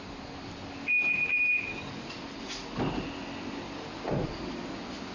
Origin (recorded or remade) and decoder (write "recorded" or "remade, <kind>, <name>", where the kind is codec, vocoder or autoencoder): recorded